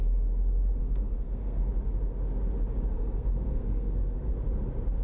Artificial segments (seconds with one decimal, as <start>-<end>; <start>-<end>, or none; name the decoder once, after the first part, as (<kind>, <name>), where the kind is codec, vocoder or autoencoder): 0.8-1.7 (codec, SNAC); 2.9-4.3